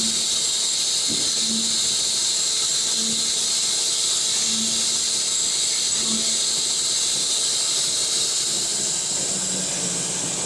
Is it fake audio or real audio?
real